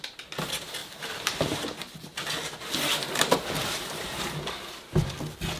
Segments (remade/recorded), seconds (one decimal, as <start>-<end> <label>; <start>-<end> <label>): 0.0-3.6 recorded; 3.6-4.2 remade; 4.2-5.6 recorded